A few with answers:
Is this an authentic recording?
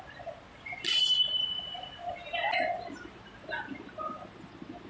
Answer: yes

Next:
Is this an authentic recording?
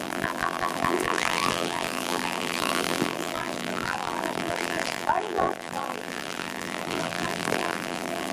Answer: no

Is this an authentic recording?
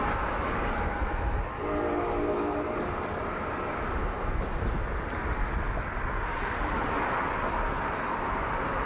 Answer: yes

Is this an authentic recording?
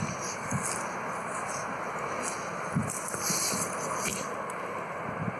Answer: yes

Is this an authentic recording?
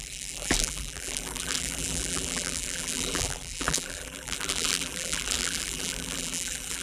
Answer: no